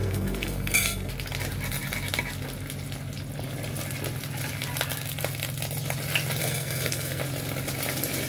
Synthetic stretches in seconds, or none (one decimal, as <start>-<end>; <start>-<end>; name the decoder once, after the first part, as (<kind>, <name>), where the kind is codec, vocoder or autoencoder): 0.0-1.1 (codec, SNAC); 6.4-7.2